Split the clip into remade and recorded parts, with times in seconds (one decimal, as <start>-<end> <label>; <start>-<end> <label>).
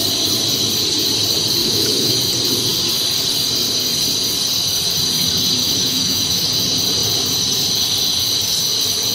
0.0-1.6 recorded; 1.6-2.2 remade; 2.2-5.6 recorded; 5.6-6.5 remade; 6.5-9.1 recorded